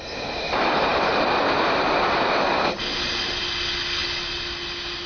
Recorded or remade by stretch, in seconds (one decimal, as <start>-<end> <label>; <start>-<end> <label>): 0.0-5.1 recorded